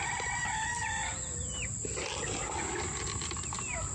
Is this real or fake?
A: real